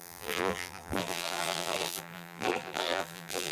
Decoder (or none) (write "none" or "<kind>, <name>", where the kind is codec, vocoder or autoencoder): vocoder, BigVGAN v2